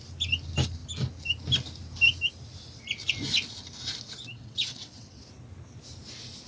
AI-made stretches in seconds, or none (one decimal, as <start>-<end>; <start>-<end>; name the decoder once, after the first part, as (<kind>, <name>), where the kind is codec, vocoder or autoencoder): 4.3-5.2 (vocoder, WaveNeXt)